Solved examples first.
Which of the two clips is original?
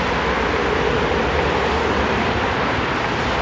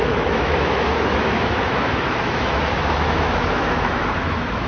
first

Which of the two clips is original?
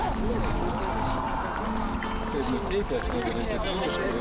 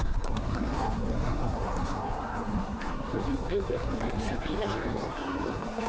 first